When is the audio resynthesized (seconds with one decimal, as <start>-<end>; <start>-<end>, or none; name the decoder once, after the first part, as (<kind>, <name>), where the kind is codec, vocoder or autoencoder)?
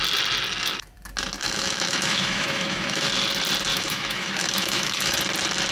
1.4-3.1 (autoencoder, DAC-VAE); 3.7-5.2